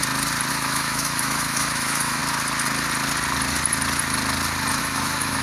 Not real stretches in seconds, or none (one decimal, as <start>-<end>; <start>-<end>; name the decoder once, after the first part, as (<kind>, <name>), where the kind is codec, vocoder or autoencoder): 0.5-2.2 (autoencoder, DAC-VAE); 4.8-5.4